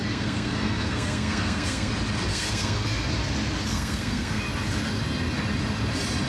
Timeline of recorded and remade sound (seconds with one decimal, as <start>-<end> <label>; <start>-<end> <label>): 0.0-1.9 remade; 1.9-2.3 recorded; 2.3-3.1 remade; 3.1-3.7 recorded; 3.7-4.4 remade; 4.4-6.3 recorded